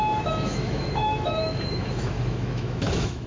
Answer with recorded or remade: remade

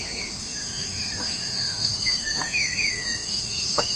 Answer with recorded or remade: remade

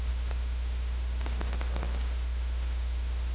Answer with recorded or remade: remade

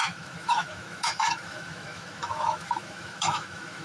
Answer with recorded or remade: remade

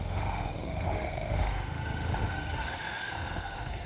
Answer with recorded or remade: remade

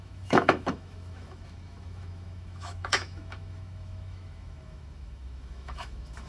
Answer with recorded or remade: remade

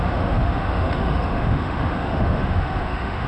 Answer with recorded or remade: remade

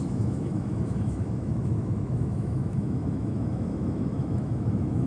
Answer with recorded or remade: remade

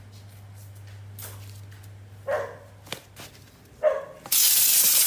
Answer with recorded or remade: recorded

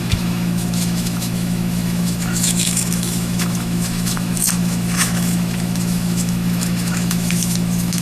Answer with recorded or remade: remade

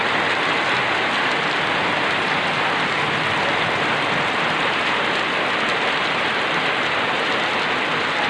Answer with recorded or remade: recorded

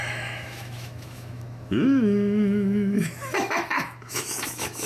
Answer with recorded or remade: remade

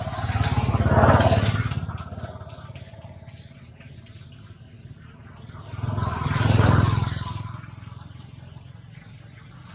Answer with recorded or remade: recorded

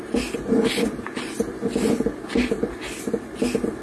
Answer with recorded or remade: recorded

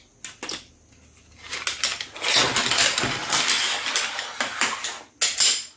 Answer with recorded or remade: recorded